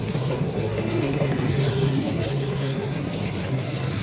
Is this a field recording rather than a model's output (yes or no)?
no